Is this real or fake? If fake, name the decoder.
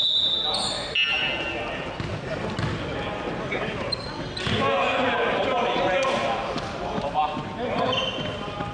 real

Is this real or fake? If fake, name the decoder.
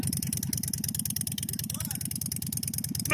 real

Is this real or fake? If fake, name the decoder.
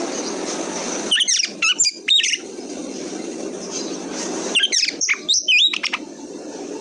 fake, vocoder, BigVGAN v2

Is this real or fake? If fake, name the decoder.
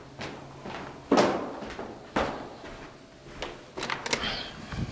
real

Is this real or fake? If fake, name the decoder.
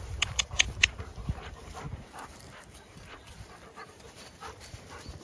fake, vocoder, BigVGAN v2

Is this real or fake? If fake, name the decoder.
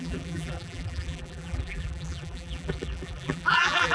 fake, vocoder, BigVGAN v2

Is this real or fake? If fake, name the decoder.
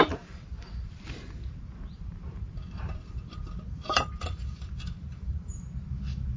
fake, vocoder, BigVGAN v2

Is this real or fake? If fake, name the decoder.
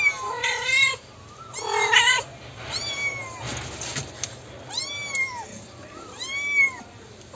real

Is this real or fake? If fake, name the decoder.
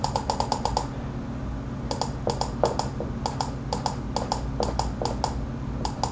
real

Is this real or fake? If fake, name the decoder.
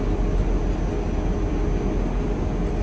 real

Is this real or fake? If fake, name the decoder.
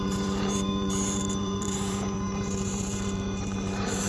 fake, vocoder, BigVGAN v2